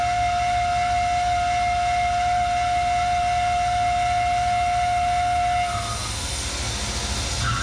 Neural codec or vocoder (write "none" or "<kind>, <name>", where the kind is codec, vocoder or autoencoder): none